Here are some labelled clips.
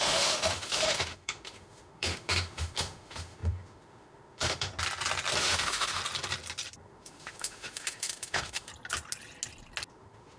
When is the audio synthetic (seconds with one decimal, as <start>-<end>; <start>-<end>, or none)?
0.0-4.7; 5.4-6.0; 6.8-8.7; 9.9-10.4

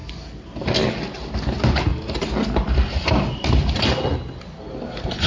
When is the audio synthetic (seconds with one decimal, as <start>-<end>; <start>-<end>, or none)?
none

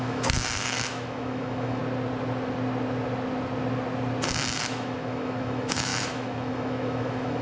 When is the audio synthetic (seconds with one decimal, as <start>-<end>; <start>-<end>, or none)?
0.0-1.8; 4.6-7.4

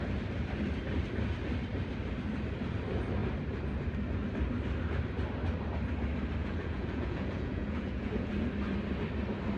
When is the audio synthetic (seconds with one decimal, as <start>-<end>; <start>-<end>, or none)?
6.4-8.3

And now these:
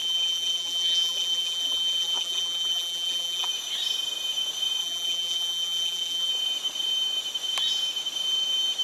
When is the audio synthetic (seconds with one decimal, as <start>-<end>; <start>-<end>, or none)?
0.0-3.5; 4.8-6.3

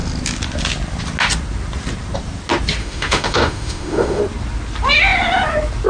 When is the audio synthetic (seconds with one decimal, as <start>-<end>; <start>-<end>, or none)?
2.8-4.2